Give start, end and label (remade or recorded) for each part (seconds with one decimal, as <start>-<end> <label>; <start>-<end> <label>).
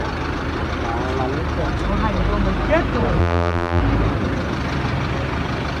0.0-3.2 recorded; 3.2-3.8 remade; 3.8-5.8 recorded